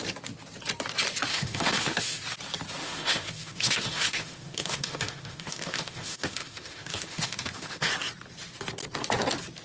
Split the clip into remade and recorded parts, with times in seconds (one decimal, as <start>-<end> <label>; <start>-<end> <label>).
0.0-1.3 recorded; 1.3-2.2 remade; 2.2-2.8 recorded; 2.8-7.9 remade; 7.9-9.6 recorded